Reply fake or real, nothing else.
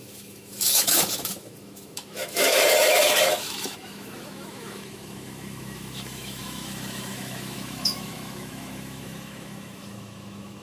fake